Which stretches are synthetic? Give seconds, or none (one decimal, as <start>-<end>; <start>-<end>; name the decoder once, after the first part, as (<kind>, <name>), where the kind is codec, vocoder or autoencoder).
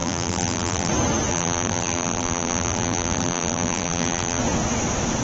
0.0-0.9 (vocoder, BigVGAN v2); 1.3-4.4